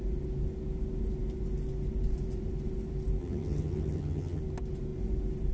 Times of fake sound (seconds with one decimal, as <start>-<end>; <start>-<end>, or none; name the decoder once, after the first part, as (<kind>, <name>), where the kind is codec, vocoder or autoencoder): 3.2-4.4 (vocoder, HiFi-GAN)